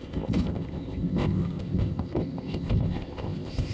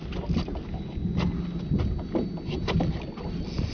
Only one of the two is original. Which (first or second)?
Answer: second